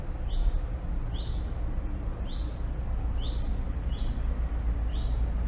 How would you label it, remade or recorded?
recorded